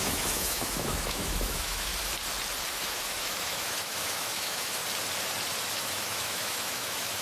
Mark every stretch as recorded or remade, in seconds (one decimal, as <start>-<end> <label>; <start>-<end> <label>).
0.0-1.9 remade; 1.9-2.7 recorded; 2.7-4.8 remade; 4.8-5.7 recorded; 5.7-7.2 remade